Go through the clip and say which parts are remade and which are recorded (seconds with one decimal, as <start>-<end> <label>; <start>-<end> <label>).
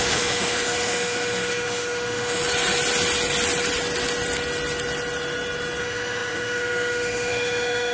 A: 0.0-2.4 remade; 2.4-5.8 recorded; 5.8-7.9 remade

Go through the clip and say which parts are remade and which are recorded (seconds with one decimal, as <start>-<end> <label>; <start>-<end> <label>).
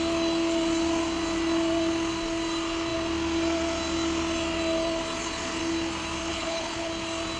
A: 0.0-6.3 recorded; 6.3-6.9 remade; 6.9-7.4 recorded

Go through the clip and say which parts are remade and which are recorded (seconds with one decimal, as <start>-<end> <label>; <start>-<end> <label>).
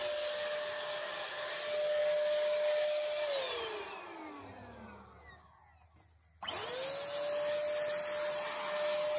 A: 0.0-9.2 recorded